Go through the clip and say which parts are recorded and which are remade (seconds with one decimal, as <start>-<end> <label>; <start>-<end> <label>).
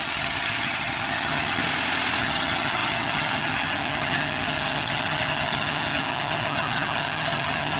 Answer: 0.0-1.6 remade; 1.6-2.2 recorded; 2.2-7.8 remade